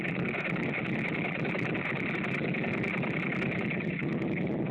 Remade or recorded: recorded